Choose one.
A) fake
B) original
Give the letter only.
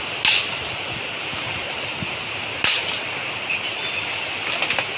B